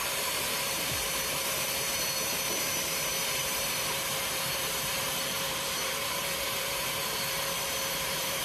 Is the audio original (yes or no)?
no